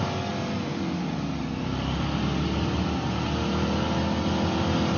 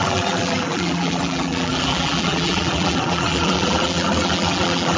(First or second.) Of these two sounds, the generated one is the second